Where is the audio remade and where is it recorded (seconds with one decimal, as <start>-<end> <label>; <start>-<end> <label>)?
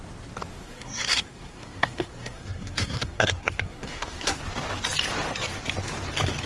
0.0-0.5 recorded; 0.5-4.4 remade; 4.4-6.5 recorded